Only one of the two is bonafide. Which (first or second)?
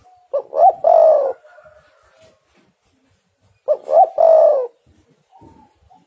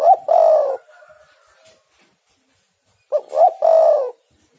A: first